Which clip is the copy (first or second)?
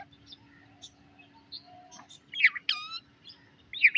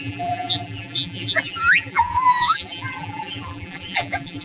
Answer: second